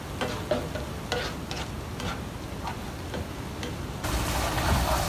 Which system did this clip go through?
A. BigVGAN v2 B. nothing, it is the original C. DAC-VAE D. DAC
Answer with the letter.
B